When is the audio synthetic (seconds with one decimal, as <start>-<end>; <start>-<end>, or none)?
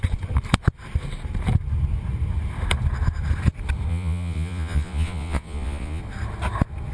3.9-6.0